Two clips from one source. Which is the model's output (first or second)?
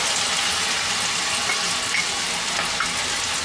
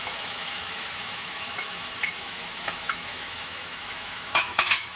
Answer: second